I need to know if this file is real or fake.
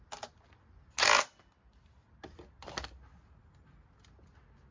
real